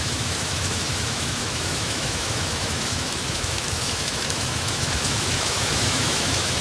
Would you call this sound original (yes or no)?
no